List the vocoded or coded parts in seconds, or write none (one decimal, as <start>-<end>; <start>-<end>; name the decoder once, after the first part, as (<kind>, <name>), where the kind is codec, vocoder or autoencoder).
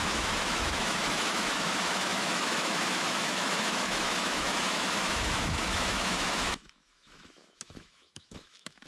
0.0-8.9 (autoencoder, DAC-VAE)